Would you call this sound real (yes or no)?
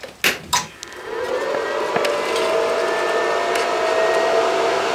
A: yes